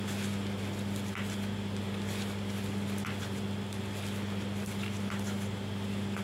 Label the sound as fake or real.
real